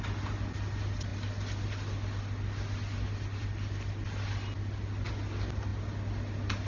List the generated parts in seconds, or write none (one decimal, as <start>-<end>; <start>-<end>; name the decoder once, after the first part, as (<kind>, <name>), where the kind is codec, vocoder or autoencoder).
none